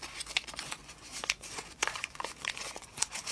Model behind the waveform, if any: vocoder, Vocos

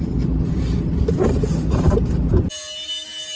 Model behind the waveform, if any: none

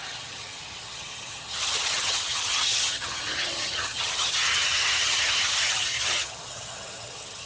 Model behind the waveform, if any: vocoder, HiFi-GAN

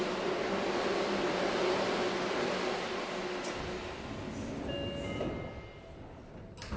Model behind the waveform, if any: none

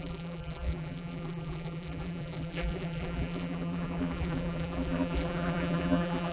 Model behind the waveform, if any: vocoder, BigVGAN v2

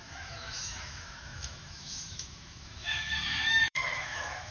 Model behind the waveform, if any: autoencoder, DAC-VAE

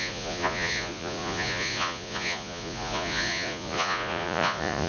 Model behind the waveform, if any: vocoder, Vocos